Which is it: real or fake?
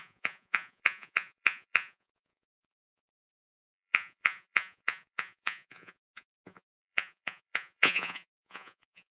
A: fake